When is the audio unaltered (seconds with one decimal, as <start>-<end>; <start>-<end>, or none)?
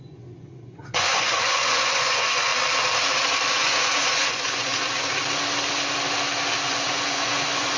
2.5-3.5; 4.7-6.7